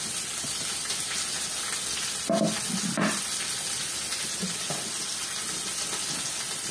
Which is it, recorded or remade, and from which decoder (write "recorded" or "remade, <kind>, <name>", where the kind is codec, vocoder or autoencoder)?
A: recorded